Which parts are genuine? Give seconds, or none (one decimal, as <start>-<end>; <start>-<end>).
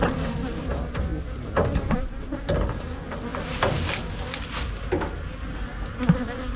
0.0-6.6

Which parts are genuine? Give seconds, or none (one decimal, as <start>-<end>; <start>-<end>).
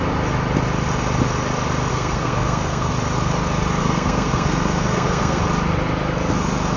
0.0-1.9; 2.9-3.8; 5.4-6.8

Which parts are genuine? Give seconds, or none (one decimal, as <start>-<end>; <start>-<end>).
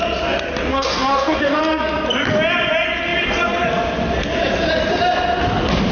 0.0-0.7; 1.6-5.9